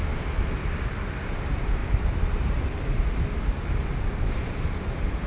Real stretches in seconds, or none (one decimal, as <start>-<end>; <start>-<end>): 0.0-5.3